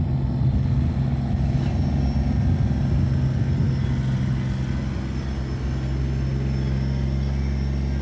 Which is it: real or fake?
real